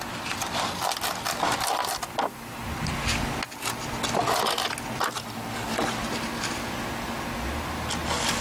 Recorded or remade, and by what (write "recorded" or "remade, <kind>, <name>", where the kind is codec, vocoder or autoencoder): recorded